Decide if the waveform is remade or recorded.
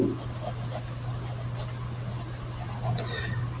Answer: recorded